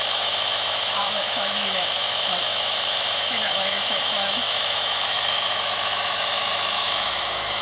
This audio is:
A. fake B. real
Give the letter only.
A